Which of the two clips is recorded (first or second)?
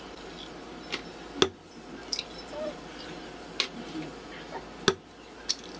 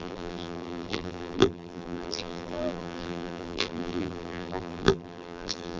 first